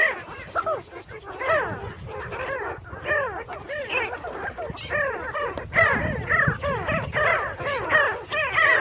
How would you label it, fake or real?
fake